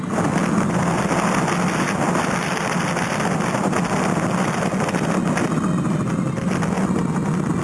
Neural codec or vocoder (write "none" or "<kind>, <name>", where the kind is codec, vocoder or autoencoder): none